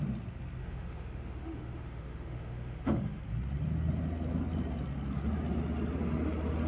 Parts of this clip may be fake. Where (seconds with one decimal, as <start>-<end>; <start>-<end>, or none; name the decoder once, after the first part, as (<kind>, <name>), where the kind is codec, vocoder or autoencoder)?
0.6-3.2 (autoencoder, DAC-VAE)